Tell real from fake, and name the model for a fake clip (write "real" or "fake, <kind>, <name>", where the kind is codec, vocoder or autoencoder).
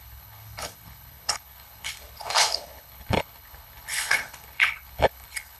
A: fake, codec, HILCodec